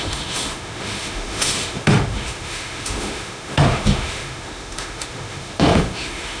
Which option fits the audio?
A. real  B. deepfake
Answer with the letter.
B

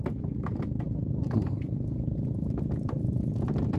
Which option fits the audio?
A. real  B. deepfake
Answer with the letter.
A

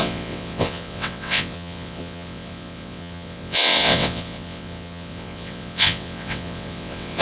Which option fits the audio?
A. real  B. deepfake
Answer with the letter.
B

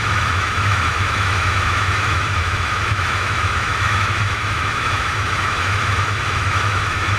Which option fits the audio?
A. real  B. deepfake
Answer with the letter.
B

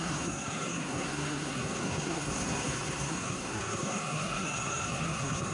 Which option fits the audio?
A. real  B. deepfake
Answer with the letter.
B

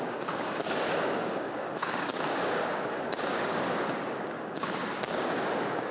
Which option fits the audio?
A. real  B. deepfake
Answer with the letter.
B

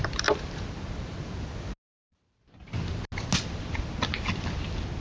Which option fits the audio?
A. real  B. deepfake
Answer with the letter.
A